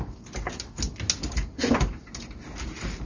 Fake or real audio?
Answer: real